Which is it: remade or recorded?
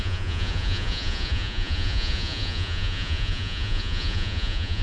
remade